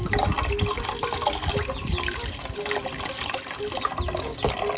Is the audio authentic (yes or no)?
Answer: yes